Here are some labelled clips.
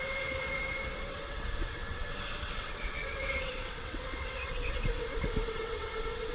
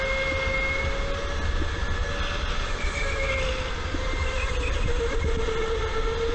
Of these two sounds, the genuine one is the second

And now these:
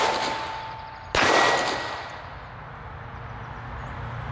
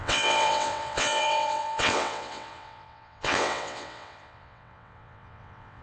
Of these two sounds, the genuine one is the first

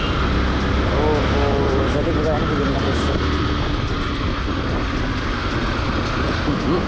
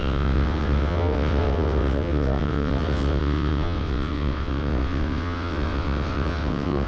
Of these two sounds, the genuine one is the first